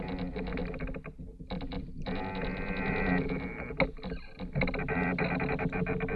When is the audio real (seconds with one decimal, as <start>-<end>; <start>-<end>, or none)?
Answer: 0.0-6.2